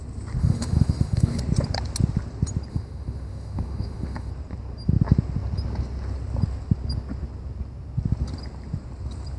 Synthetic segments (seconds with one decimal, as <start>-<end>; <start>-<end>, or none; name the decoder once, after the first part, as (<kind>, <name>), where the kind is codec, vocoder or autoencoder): 0.4-1.4 (autoencoder, DAC-VAE); 2.7-4.3